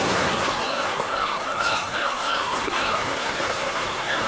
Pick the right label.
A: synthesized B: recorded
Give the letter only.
A